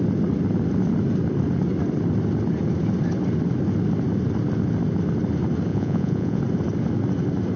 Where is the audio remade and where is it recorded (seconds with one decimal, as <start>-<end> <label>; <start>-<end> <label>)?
0.0-5.7 recorded; 5.7-6.4 remade; 6.4-7.6 recorded

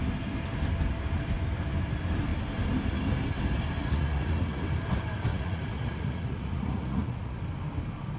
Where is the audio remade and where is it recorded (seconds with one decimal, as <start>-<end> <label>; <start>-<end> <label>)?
0.0-3.8 recorded; 3.8-4.6 remade; 4.6-5.3 recorded; 5.3-7.4 remade; 7.4-8.2 recorded

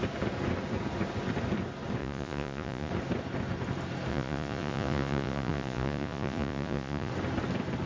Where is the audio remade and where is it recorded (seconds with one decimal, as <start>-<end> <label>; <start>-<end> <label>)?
0.0-2.0 recorded; 2.0-2.9 remade; 2.9-4.1 recorded; 4.1-7.1 remade; 7.1-7.9 recorded

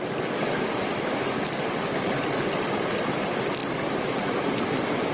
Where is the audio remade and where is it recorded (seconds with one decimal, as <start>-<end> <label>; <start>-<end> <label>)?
0.0-5.1 recorded

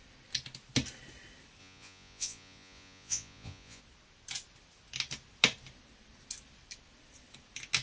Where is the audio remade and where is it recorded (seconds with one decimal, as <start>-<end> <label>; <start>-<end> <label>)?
0.0-1.6 recorded; 1.6-3.8 remade; 3.8-7.8 recorded

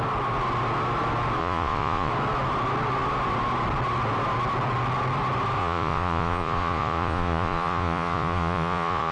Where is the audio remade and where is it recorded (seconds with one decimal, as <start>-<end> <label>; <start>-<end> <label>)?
0.0-1.4 recorded; 1.4-2.1 remade; 2.1-5.6 recorded; 5.6-9.1 remade

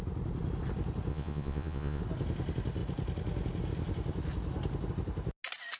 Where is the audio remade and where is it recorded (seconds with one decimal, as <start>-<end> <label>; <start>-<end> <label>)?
0.0-1.1 recorded; 1.1-2.0 remade; 2.0-5.8 recorded

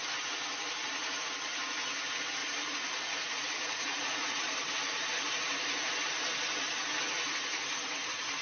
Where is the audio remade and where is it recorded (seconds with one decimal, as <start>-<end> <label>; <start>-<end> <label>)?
0.0-2.4 recorded; 2.4-4.5 remade; 4.5-8.4 recorded